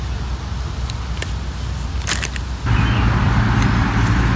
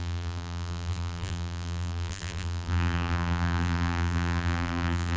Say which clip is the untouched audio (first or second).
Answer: first